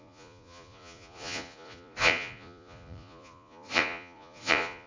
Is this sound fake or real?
fake